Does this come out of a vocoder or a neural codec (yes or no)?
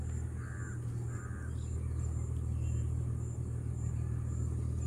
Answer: no